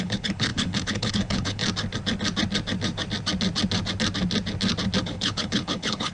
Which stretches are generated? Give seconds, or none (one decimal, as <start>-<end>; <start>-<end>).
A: 0.0-1.6; 5.0-6.1